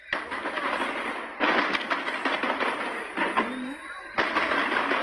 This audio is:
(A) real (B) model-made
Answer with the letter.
A